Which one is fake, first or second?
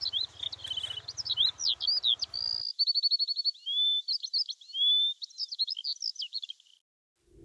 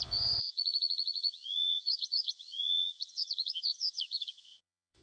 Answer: second